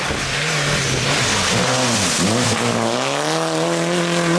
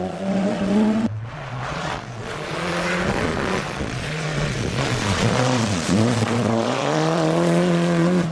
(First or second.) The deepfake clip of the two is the second